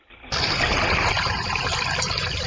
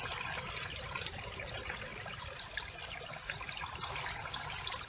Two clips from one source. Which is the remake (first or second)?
first